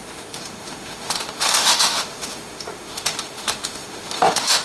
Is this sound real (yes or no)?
no